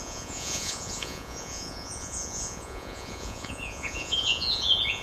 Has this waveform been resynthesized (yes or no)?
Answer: yes